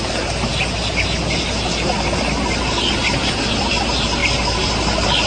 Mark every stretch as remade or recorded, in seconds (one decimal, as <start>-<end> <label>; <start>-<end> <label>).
0.0-5.3 recorded